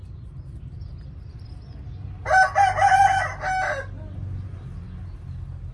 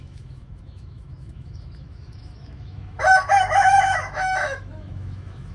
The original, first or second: first